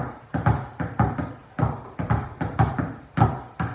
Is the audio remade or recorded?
recorded